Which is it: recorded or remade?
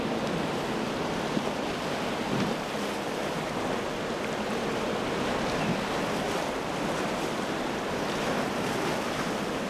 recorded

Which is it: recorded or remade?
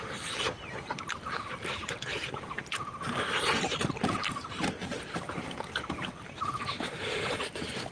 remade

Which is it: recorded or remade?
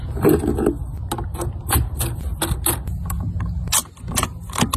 recorded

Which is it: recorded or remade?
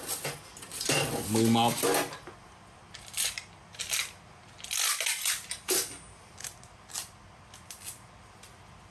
recorded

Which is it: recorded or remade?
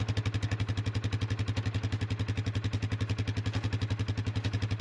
recorded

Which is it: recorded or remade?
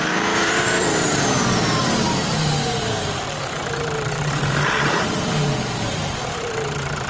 remade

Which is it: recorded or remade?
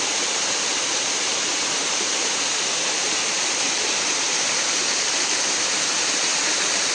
remade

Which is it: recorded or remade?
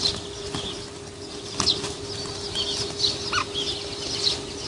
recorded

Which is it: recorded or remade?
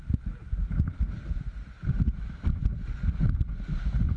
recorded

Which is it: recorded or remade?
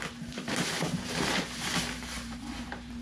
remade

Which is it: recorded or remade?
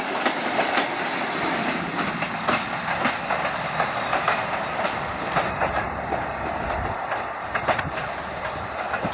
remade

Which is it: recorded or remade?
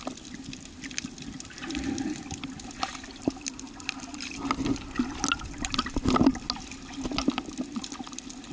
recorded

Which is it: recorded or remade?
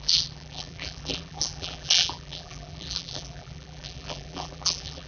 remade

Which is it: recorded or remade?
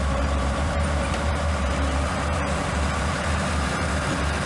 remade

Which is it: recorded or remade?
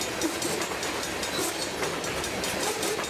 recorded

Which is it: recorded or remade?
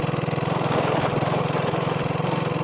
recorded